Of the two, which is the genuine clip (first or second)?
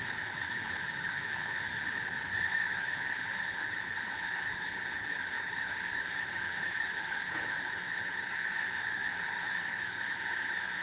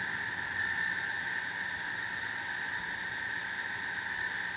second